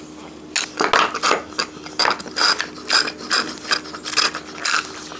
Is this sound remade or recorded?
recorded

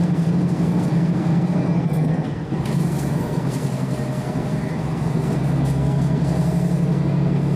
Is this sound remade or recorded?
remade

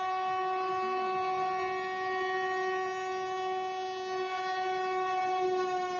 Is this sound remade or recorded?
recorded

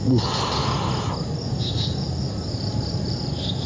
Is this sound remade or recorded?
recorded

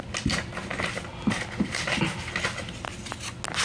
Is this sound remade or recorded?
recorded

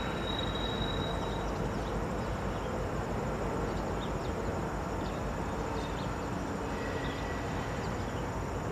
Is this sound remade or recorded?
recorded